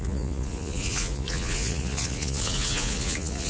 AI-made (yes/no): yes